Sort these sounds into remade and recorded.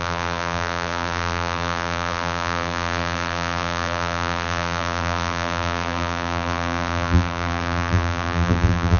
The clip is remade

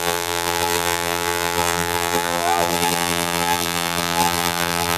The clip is remade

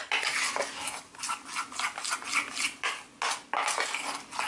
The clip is recorded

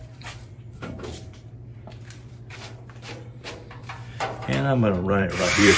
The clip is remade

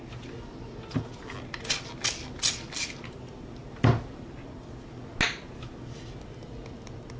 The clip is recorded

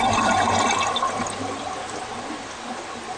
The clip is recorded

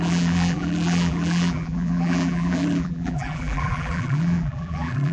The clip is remade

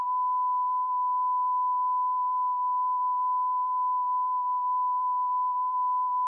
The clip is remade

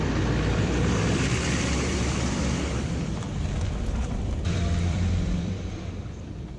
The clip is remade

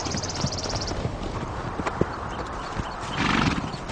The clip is remade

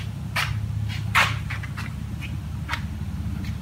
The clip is recorded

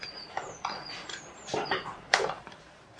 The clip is remade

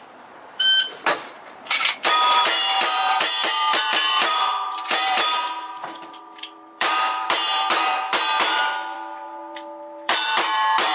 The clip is remade